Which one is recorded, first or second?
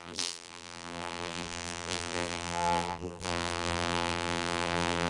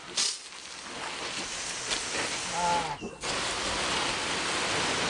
second